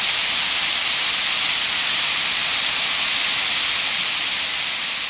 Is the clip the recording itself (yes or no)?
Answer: yes